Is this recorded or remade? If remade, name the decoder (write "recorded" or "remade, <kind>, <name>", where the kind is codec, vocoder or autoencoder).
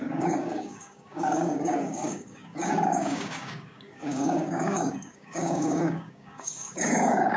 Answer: remade, codec, DAC